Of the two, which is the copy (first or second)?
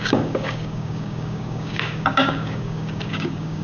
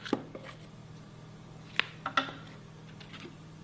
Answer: first